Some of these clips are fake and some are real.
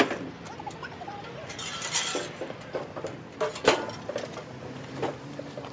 real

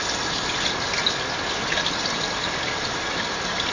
real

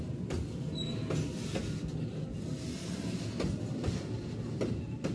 real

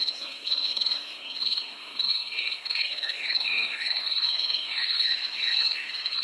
fake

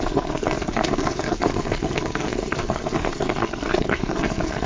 fake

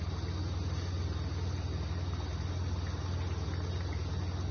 real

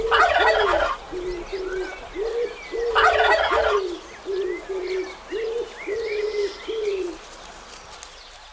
real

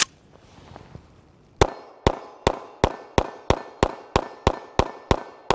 real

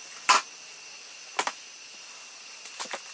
real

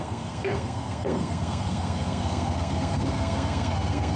fake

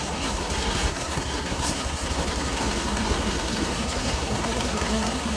fake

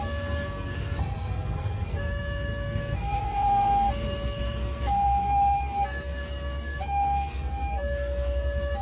fake